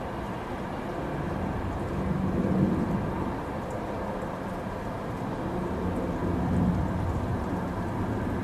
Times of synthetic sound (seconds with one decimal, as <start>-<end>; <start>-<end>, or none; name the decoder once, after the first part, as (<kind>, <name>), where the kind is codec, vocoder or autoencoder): 7.3-7.9 (vocoder, BigVGAN v2)